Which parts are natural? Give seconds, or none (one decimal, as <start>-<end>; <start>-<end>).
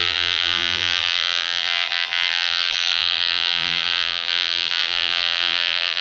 none